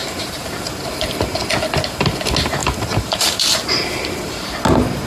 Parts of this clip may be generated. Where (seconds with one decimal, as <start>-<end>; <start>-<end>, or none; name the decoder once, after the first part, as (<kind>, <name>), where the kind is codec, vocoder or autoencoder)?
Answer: 0.0-0.6 (vocoder, BigVGAN v2); 2.6-4.6